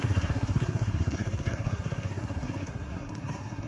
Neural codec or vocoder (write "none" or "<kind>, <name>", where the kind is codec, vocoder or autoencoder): codec, SNAC